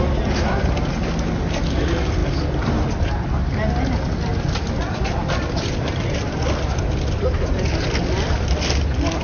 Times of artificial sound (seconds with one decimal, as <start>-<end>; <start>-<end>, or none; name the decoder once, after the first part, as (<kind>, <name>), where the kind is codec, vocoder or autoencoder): none